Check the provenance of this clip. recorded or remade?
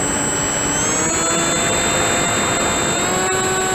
recorded